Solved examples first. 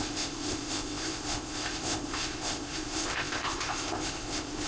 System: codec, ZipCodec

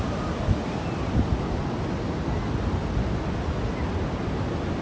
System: none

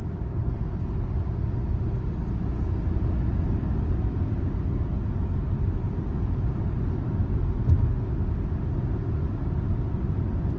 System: none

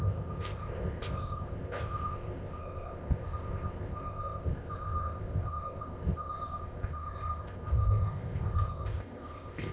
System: codec, ZipCodec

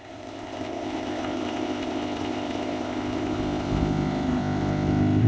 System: codec, ZipCodec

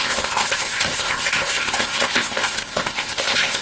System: codec, ZipCodec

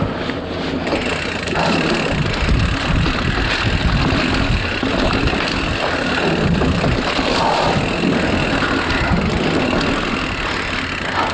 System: none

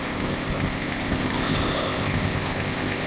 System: codec, ZipCodec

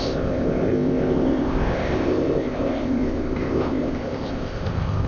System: codec, ZipCodec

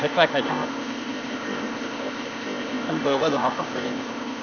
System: codec, ZipCodec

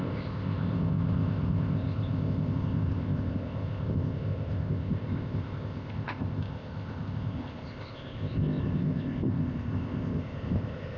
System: codec, ZipCodec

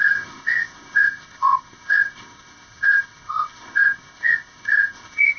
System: codec, ZipCodec